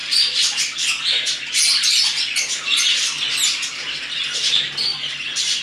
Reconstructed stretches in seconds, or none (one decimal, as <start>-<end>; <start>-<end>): 0.0-0.6; 2.3-3.7; 4.9-5.6

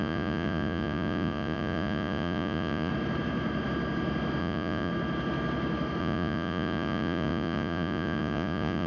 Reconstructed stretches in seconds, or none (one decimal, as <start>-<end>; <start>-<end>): 0.0-2.9; 4.4-4.9; 6.0-8.9